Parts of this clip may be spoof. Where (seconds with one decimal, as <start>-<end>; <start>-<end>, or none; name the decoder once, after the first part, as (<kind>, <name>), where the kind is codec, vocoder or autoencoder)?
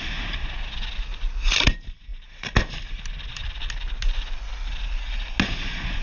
none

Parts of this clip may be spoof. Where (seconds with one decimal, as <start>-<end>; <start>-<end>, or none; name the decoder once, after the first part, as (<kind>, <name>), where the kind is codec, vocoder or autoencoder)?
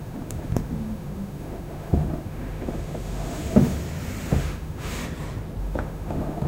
0.0-3.8 (autoencoder, DAC-VAE); 4.3-5.0; 5.6-6.5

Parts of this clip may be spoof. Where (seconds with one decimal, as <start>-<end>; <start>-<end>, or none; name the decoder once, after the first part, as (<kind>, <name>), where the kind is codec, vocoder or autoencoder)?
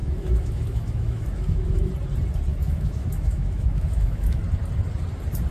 0.0-1.9 (autoencoder, DAC-VAE); 2.5-4.4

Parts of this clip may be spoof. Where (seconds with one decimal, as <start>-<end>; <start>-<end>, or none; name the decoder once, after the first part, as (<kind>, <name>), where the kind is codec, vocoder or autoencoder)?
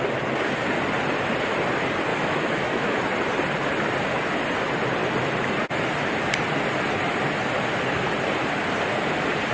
2.1-3.0 (autoencoder, DAC-VAE)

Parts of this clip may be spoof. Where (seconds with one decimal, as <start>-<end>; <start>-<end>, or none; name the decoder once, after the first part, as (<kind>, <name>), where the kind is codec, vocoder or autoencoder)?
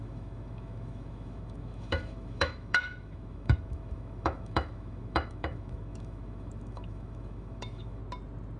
0.0-8.0 (autoencoder, DAC-VAE)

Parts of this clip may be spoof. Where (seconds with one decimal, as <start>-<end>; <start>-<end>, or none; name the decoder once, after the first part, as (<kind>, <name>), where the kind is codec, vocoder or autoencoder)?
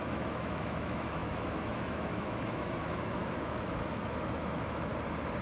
0.0-4.9 (autoencoder, DAC-VAE)